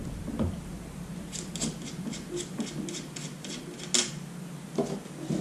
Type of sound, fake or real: real